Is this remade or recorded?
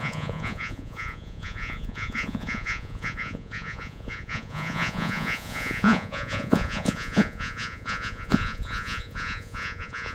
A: remade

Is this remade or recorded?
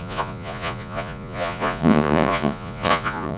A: remade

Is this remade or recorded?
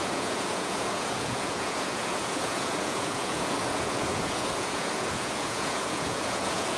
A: remade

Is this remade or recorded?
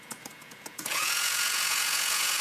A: remade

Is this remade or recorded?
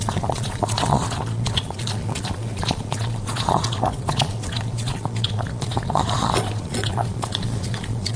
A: remade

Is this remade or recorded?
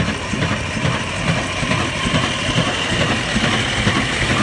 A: recorded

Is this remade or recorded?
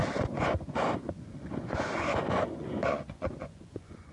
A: remade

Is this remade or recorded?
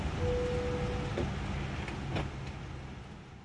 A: recorded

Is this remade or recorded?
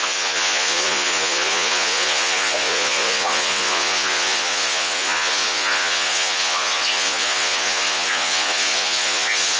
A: remade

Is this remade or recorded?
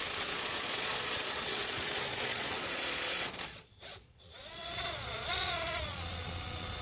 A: remade